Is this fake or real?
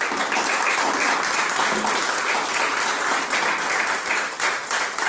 real